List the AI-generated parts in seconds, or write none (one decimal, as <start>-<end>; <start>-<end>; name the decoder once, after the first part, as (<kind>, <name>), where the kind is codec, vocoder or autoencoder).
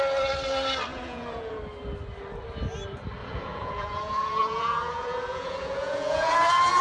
0.9-1.6 (vocoder, Vocos); 3.2-6.8